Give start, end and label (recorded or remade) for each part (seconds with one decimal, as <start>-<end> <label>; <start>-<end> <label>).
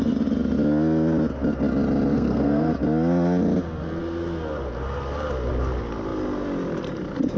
0.0-2.1 recorded; 2.1-2.7 remade; 2.7-7.4 recorded